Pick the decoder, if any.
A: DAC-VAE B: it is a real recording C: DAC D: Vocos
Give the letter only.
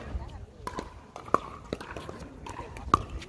B